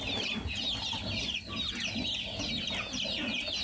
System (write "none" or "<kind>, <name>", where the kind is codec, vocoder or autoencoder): none